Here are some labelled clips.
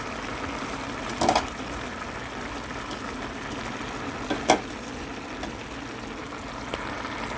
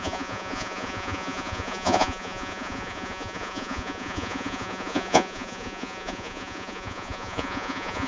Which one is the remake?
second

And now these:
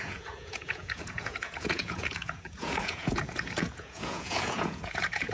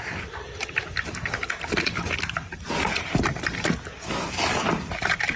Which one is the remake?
first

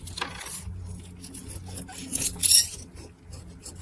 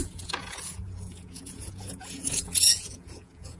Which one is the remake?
second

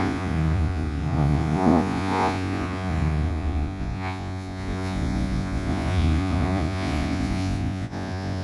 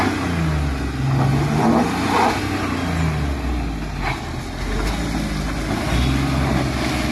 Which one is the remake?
first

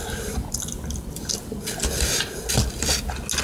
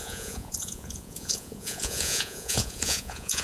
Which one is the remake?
second